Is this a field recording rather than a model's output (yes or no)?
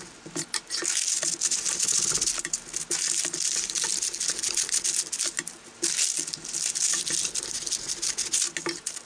yes